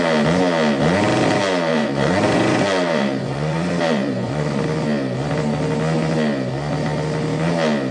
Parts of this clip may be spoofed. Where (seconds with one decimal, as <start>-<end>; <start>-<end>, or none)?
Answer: 1.7-4.6